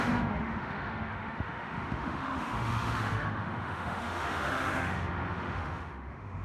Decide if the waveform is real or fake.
fake